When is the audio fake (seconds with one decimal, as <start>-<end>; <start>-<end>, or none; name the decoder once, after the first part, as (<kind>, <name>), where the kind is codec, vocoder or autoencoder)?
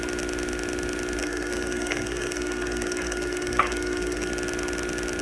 1.2-4.3 (codec, SNAC)